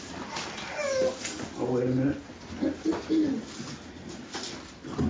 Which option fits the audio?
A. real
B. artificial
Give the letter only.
A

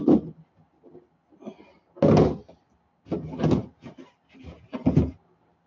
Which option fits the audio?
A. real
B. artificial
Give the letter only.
A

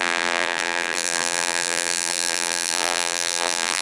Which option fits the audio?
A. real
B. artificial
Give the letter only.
B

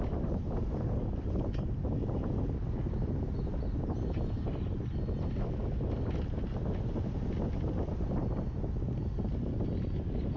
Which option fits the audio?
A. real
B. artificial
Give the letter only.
A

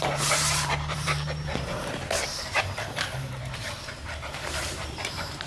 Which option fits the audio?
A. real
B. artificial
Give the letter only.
B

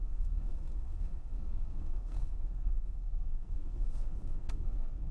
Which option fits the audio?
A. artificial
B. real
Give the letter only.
A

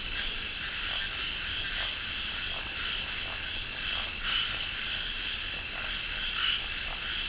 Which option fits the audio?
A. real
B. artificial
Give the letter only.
A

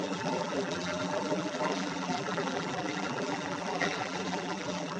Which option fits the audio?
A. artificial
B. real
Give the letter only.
A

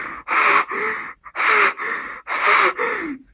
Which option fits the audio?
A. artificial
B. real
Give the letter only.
B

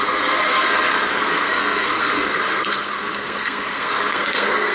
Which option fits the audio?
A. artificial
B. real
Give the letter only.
A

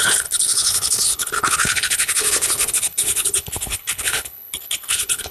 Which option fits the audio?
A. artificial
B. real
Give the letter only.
A